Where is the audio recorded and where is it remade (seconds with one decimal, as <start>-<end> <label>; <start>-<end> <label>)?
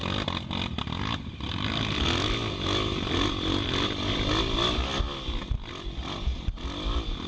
0.0-7.3 recorded